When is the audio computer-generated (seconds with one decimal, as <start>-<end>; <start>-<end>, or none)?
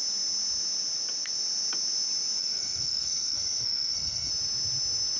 2.4-4.3